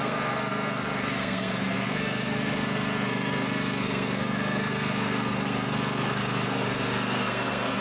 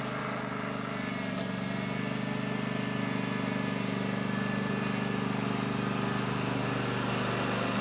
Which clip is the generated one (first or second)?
first